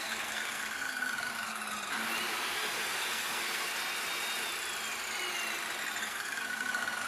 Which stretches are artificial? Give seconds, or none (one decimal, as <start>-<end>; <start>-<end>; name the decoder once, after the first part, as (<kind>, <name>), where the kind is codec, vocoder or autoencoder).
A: 0.0-1.6 (codec, SNAC); 2.3-3.7; 6.0-7.1